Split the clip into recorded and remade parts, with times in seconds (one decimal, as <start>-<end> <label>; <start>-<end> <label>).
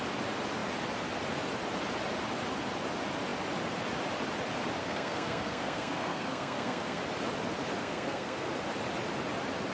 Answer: 0.0-4.8 recorded; 4.8-7.0 remade; 7.0-7.8 recorded; 7.8-8.5 remade; 8.5-9.7 recorded